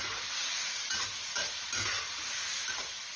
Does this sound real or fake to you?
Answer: real